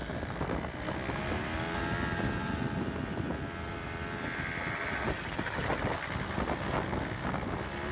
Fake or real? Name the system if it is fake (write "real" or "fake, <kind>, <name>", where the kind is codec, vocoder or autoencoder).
real